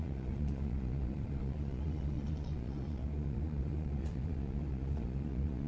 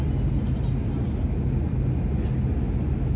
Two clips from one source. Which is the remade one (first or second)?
first